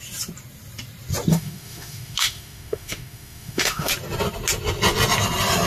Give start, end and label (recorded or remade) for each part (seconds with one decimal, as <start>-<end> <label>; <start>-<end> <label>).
0.0-1.3 recorded; 1.3-3.9 remade; 3.9-5.7 recorded